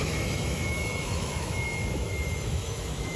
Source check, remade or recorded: remade